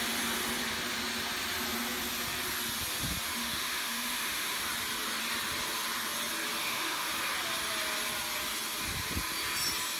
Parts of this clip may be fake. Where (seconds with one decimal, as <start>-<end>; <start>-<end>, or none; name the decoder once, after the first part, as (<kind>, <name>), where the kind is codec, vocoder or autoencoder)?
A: 3.4-4.7 (autoencoder, DAC-VAE); 6.6-7.1